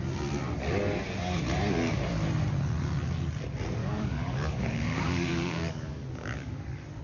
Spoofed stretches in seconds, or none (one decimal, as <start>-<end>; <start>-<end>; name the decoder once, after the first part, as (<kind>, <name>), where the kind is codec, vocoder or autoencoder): 3.8-7.0 (codec, DAC)